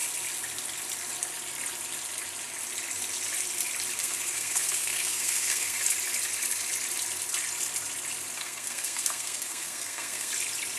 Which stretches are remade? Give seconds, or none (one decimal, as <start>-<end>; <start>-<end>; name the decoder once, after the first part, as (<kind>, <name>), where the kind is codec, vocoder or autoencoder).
4.0-5.8 (codec, SNAC); 8.4-10.3